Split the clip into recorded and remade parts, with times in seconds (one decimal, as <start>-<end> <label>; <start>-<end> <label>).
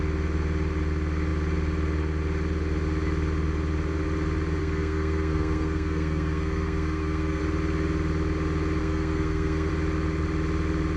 0.0-4.6 recorded; 4.6-7.4 remade; 7.4-8.8 recorded; 8.8-9.7 remade; 9.7-11.0 recorded